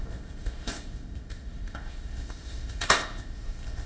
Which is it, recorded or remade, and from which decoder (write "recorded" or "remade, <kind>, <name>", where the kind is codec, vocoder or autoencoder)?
remade, codec, ZipCodec